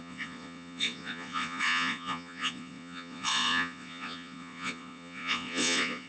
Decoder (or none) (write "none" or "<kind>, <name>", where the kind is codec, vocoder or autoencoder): vocoder, Vocos